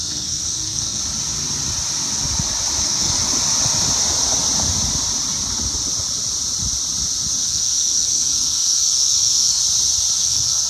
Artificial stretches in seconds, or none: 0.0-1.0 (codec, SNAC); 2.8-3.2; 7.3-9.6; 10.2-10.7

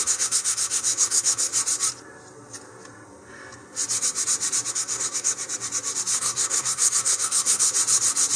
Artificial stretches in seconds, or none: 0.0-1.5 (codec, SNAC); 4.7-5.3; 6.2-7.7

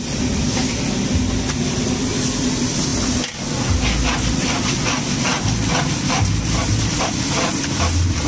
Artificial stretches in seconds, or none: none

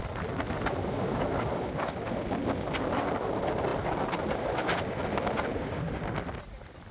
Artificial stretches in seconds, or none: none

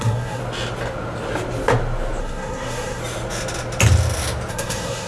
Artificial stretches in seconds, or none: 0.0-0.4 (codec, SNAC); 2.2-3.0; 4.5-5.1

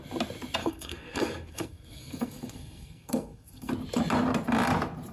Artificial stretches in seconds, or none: 0.6-3.7 (codec, SNAC)

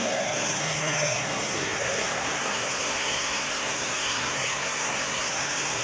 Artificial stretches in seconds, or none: 0.0-5.8 (codec, SNAC)